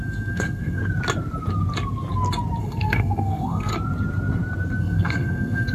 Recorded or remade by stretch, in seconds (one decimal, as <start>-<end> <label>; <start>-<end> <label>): 0.0-0.8 remade; 0.8-2.6 recorded; 2.6-3.7 remade; 3.7-4.8 recorded; 4.8-5.7 remade